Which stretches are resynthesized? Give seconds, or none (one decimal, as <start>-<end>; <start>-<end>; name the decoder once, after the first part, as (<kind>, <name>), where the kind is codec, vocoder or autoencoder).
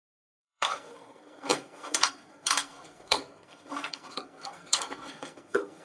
0.0-5.8 (codec, SNAC)